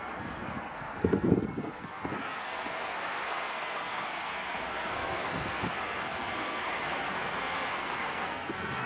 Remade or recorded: remade